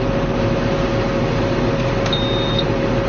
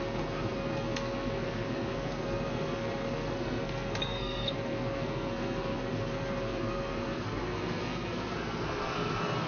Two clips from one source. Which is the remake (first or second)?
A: second